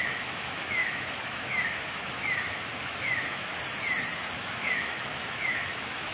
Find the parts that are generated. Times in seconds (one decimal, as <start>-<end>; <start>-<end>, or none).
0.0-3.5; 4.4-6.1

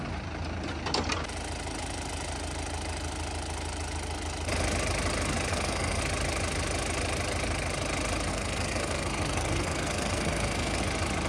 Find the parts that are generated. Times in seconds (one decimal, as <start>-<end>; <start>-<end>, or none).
5.5-6.0; 8.3-10.8

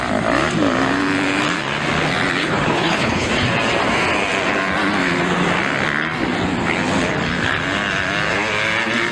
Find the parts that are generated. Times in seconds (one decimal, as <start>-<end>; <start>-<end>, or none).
2.4-3.3

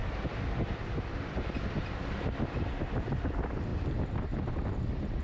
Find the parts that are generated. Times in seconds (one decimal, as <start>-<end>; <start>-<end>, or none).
0.0-3.7; 4.8-5.2

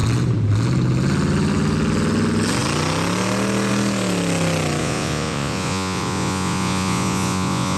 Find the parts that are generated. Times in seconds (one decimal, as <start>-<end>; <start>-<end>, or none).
4.8-7.8

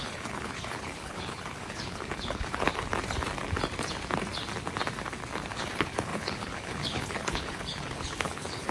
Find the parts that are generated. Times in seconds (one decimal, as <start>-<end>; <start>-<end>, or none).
0.0-2.9; 5.5-8.7